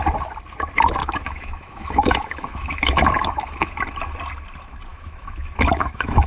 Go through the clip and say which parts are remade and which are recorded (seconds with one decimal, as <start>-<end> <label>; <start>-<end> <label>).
0.0-1.0 recorded; 1.0-3.7 remade; 3.7-4.9 recorded; 4.9-6.3 remade